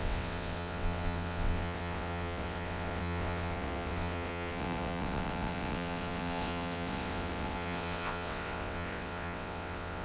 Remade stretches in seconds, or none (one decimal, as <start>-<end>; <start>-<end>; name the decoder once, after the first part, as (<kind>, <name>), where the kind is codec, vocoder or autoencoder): 0.0-10.0 (vocoder, WaveNeXt)